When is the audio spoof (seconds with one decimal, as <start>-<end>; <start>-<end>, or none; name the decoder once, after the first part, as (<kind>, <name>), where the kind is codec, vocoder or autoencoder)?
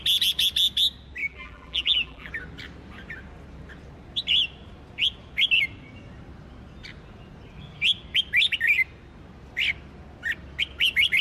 1.2-2.3 (vocoder, BigVGAN v2)